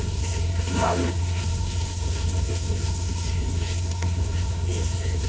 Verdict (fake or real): fake